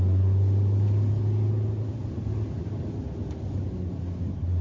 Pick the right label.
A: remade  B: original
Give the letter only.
B